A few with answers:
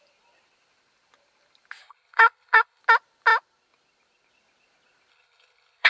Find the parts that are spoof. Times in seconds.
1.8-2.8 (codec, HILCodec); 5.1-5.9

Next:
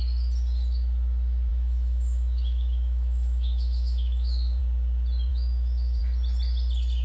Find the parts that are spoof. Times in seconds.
1.5-4.6 (autoencoder, DAC-VAE); 5.3-6.0

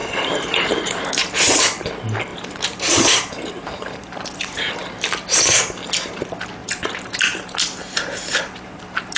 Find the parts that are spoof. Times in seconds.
0.0-1.6 (vocoder, BigVGAN v2); 2.3-4.7; 6.6-9.2

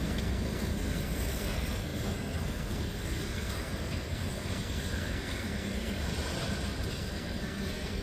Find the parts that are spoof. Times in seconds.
0.0-6.1 (codec, SNAC); 6.9-8.0

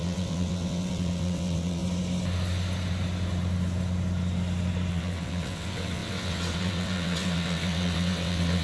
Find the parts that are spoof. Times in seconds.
0.0-1.8 (vocoder, WaveNeXt); 4.9-8.6